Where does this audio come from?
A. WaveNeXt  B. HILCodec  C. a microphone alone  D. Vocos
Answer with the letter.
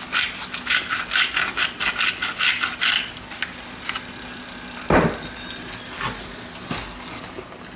C